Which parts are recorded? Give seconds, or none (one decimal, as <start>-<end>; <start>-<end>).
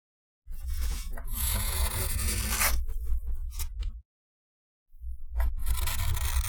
2.4-3.4; 4.7-6.5